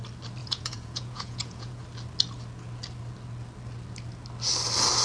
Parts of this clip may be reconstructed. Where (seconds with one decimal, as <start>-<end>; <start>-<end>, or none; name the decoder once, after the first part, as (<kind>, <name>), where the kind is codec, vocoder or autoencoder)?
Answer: 0.4-1.8 (vocoder, Vocos)